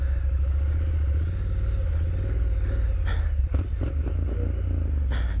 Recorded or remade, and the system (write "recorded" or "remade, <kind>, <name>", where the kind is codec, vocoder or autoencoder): recorded